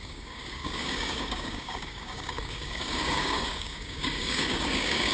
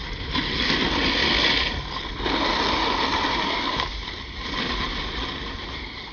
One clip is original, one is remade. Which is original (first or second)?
second